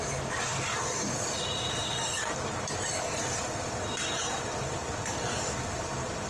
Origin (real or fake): fake